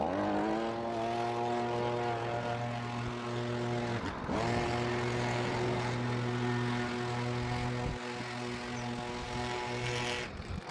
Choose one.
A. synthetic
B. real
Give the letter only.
B